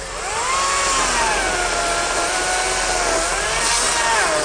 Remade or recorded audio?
recorded